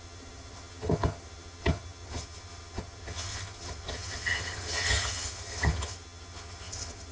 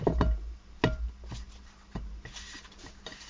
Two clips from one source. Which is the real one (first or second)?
second